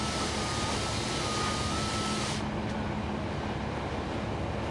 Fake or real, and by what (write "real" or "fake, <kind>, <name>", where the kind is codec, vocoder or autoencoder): real